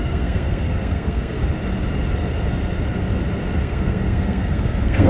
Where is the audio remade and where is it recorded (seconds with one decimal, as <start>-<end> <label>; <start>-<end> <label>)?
0.0-1.4 remade; 1.4-3.6 recorded; 3.6-5.1 remade